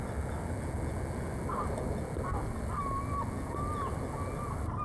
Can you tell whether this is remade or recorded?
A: recorded